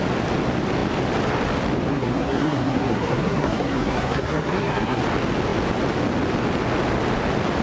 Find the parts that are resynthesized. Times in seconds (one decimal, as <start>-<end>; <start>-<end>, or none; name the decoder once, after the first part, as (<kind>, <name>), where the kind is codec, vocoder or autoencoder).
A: 1.9-5.0 (codec, SNAC)

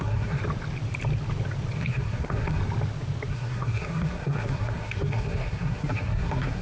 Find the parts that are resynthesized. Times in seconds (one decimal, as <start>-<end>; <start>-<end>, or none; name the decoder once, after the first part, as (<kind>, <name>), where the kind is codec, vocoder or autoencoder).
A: 0.0-0.4 (codec, SNAC); 1.8-2.6; 3.3-6.6

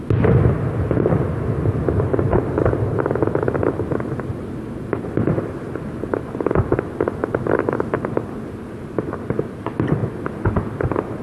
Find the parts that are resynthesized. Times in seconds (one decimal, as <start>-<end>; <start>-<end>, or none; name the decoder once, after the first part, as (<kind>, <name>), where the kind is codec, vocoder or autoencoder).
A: none

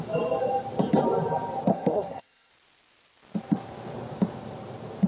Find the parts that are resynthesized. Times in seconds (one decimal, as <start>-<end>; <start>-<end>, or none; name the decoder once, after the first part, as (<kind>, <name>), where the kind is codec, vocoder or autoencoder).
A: 1.7-2.5 (codec, SNAC)

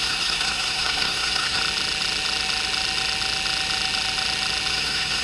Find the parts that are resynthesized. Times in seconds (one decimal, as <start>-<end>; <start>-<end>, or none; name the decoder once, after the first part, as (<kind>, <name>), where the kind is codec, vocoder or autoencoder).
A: 0.0-1.6 (codec, SNAC); 4.7-5.2

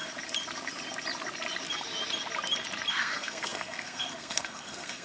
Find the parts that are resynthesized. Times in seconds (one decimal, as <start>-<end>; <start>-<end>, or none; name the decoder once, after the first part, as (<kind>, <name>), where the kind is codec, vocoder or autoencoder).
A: 2.9-5.0 (codec, SNAC)